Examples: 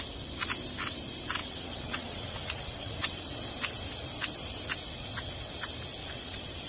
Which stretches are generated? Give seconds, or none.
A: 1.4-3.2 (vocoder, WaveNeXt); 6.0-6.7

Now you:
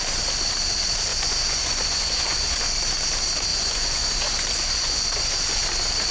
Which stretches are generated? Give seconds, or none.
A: 1.1-2.6 (vocoder, Vocos); 3.5-5.2

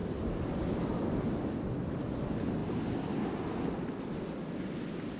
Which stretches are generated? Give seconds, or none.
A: none

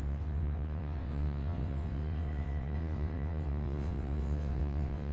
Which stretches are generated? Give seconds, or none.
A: 0.0-5.1 (vocoder, WaveNeXt)